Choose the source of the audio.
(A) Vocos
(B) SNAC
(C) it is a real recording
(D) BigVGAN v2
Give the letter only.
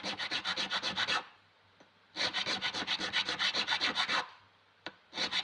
D